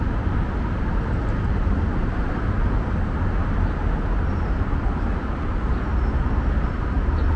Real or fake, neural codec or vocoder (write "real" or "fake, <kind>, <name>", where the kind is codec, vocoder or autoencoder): real